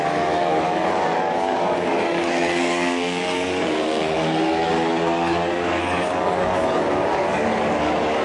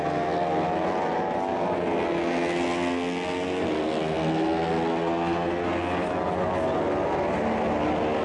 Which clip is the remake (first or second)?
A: first